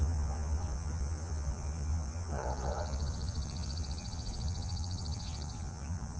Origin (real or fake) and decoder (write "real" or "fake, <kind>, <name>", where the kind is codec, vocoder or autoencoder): fake, vocoder, Vocos